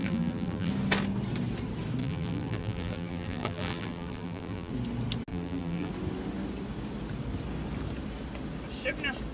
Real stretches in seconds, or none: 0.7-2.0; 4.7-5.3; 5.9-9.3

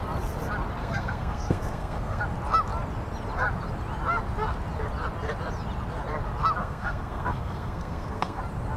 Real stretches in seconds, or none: 0.0-0.8; 2.2-6.6; 8.4-8.8